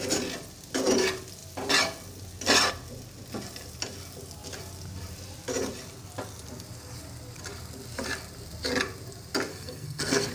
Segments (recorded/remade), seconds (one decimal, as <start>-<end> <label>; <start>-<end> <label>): 0.0-9.5 recorded; 9.5-10.3 remade

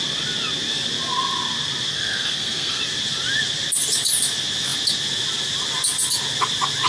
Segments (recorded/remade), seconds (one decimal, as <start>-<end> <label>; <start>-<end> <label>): 0.0-1.9 recorded; 1.9-2.8 remade; 2.8-6.9 recorded

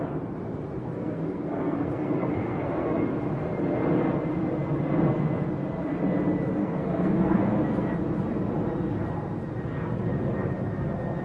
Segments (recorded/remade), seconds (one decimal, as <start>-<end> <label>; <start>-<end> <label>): 0.0-0.8 recorded; 0.8-3.0 remade; 3.0-6.6 recorded; 6.6-7.9 remade; 7.9-11.2 recorded

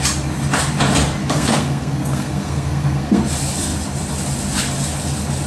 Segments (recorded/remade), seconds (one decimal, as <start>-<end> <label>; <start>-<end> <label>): 0.0-1.2 recorded; 1.2-3.2 remade; 3.2-5.5 recorded

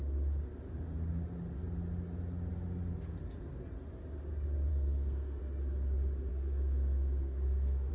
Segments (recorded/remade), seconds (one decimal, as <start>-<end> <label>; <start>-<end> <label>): 0.0-4.7 recorded; 4.7-5.4 remade; 5.4-6.3 recorded; 6.3-7.9 remade

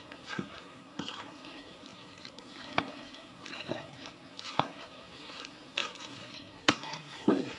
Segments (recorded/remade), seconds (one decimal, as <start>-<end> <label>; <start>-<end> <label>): 0.0-7.6 remade